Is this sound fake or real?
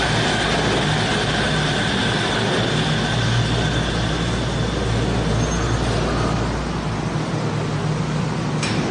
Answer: real